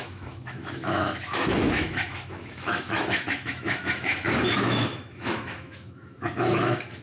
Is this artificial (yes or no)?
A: yes